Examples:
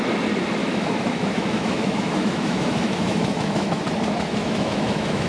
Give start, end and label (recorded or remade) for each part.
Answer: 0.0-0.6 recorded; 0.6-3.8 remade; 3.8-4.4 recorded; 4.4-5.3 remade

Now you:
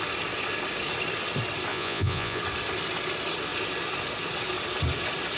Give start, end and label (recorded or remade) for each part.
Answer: 0.0-1.7 recorded; 1.7-2.4 remade; 2.4-5.4 recorded